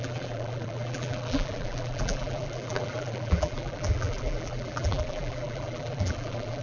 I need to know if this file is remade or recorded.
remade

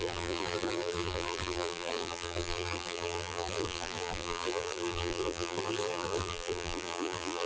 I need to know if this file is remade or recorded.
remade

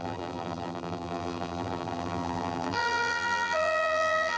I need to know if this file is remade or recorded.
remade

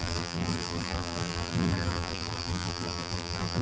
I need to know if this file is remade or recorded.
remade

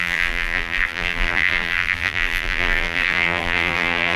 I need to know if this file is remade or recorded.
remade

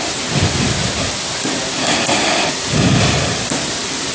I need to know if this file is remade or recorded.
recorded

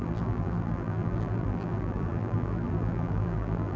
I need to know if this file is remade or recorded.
remade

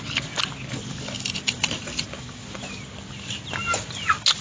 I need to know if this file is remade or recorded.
recorded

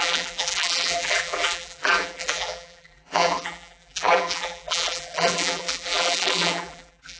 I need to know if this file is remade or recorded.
remade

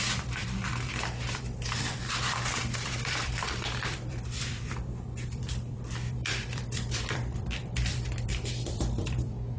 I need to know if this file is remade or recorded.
remade